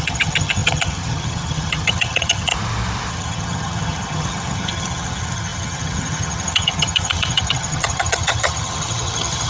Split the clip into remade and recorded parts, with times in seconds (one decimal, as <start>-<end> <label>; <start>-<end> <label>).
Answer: 0.0-2.5 remade; 2.5-3.1 recorded; 3.1-9.5 remade